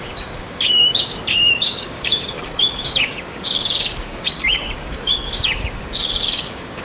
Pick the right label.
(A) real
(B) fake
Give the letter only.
B